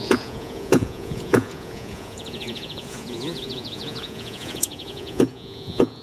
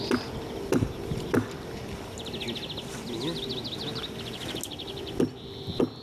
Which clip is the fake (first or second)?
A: first